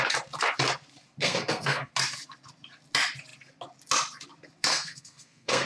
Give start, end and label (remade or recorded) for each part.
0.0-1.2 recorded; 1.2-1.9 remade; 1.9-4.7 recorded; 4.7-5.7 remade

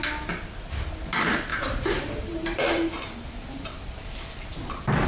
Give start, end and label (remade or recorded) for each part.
0.0-1.5 recorded; 1.5-2.9 remade; 2.9-3.4 recorded; 3.4-4.1 remade; 4.1-5.1 recorded

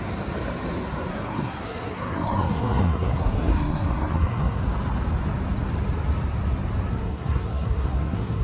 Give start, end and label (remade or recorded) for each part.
0.0-1.1 recorded; 1.1-4.6 remade; 4.6-6.9 recorded; 6.9-8.4 remade

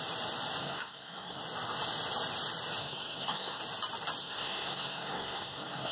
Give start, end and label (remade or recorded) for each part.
0.0-0.6 recorded; 0.6-1.4 remade; 1.4-2.8 recorded; 2.8-3.6 remade; 3.6-4.2 recorded; 4.2-5.9 remade

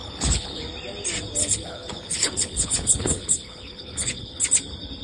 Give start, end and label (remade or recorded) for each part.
0.0-0.6 remade; 0.6-1.4 recorded; 1.4-4.4 remade; 4.4-5.0 recorded

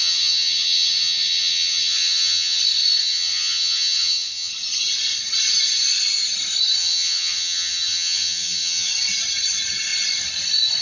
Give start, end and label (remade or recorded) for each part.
0.0-2.6 remade; 2.6-3.0 recorded; 3.0-4.5 remade; 4.5-6.8 recorded; 6.8-8.9 remade; 8.9-10.8 recorded

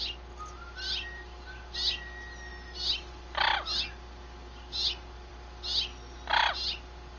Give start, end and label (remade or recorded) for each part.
0.0-7.2 recorded